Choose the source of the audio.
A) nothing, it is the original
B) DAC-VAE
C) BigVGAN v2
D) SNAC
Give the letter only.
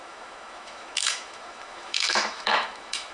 B